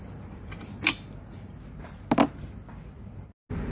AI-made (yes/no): no